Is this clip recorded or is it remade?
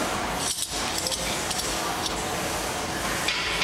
recorded